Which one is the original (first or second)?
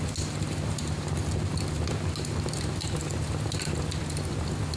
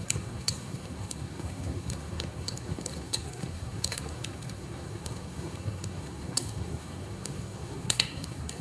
first